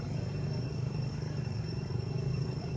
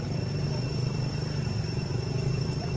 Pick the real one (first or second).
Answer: second